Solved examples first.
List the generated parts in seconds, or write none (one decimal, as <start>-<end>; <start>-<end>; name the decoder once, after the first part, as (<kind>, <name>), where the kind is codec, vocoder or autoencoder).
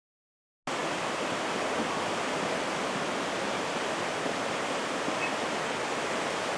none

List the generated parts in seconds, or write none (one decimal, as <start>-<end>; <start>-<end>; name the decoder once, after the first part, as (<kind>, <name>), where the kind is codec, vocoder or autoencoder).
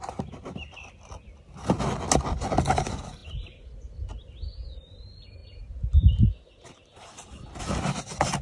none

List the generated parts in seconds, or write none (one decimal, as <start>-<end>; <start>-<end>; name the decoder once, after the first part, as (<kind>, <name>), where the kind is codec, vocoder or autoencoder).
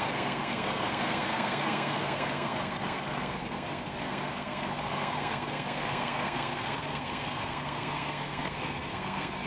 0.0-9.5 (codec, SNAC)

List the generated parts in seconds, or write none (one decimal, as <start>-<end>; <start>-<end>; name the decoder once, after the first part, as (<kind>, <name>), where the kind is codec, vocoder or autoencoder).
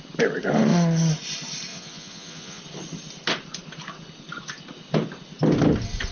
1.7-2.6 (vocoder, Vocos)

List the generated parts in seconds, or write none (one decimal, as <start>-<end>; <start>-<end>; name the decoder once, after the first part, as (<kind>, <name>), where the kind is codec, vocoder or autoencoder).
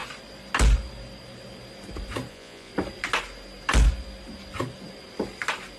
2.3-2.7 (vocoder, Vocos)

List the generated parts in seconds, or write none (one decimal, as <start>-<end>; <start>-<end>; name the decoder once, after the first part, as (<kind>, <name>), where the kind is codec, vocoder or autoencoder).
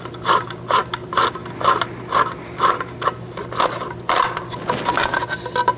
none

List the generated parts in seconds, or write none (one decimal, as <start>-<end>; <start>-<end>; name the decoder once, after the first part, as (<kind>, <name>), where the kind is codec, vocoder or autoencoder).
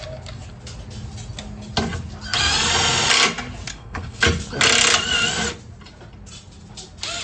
3.7-4.2 (codec, SNAC)